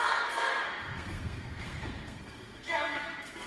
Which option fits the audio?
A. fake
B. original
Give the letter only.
A